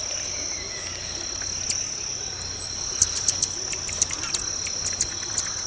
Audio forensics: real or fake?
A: real